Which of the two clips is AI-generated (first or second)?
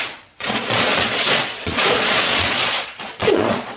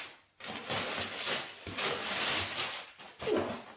first